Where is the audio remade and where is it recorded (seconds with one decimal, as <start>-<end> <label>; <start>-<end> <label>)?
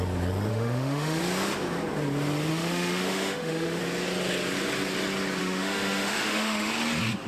0.0-0.5 recorded; 0.5-1.2 remade; 1.2-2.5 recorded; 2.5-3.8 remade; 3.8-5.4 recorded; 5.4-6.7 remade; 6.7-7.3 recorded